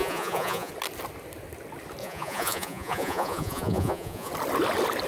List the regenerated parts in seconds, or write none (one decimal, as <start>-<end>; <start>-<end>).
0.0-0.7; 2.0-4.3